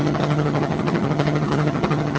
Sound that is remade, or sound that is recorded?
remade